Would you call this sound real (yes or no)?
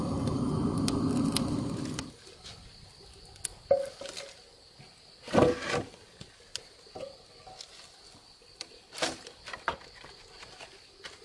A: yes